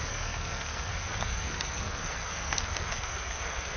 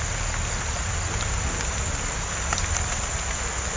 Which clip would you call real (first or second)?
second